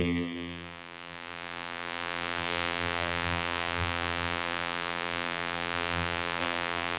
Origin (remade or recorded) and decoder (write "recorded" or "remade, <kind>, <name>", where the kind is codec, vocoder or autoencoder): remade, vocoder, BigVGAN v2